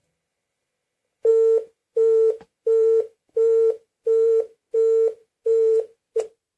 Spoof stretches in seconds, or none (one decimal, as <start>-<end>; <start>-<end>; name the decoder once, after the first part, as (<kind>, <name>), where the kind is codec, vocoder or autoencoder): 1.8-4.6 (vocoder, BigVGAN v2); 5.2-6.6